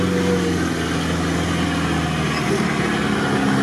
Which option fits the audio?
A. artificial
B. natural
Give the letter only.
B